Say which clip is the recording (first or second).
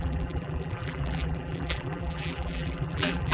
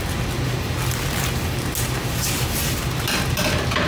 second